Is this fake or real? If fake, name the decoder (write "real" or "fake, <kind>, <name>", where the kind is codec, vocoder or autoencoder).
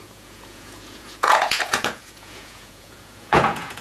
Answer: fake, vocoder, Vocos